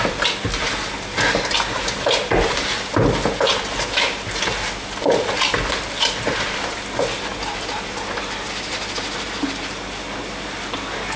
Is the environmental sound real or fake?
real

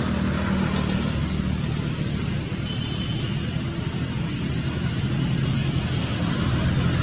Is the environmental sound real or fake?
real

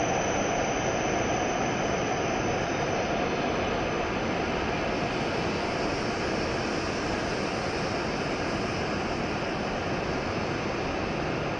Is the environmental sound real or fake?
real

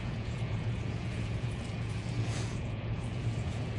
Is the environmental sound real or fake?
fake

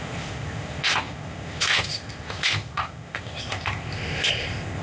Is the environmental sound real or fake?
fake